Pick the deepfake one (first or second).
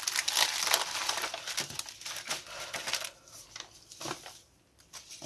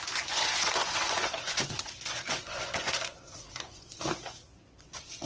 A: second